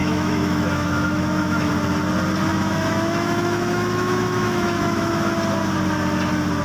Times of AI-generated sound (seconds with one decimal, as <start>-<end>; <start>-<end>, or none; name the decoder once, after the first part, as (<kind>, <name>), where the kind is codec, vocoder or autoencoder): 0.0-1.7 (autoencoder, DAC-VAE); 2.5-5.1